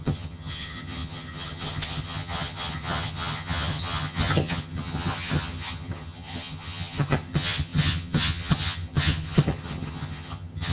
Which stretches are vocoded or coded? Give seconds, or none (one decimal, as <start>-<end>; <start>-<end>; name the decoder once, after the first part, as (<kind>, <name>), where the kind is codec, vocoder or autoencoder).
0.0-10.7 (vocoder, HiFi-GAN)